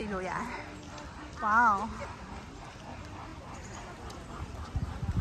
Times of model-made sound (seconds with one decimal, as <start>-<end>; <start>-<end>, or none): 2.7-5.2